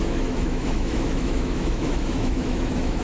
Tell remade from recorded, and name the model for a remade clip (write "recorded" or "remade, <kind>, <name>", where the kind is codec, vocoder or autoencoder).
remade, autoencoder, DAC-VAE